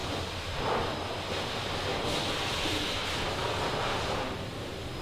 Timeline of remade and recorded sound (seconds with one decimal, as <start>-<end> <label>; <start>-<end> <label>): 0.0-1.3 remade; 1.3-5.0 recorded